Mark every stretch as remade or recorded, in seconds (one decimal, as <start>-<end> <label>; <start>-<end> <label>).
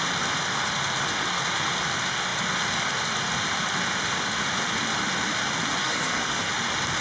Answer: 0.0-5.8 recorded; 5.8-6.5 remade; 6.5-7.0 recorded